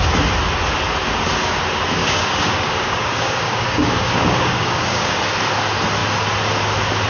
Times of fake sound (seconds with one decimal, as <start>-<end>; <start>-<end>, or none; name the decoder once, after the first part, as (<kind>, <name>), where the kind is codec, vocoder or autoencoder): 2.0-5.2 (codec, DAC)